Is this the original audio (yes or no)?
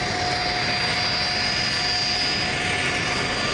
yes